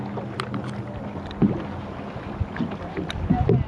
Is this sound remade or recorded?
recorded